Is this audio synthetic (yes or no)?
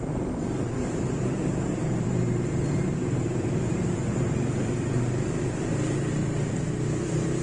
yes